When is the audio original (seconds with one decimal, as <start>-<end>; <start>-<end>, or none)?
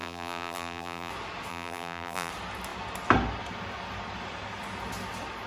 1.1-1.5; 2.3-5.5